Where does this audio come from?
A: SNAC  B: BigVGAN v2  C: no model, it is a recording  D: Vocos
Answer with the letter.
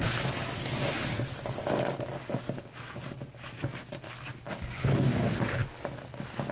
C